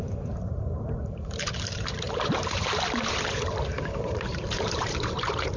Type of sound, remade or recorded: remade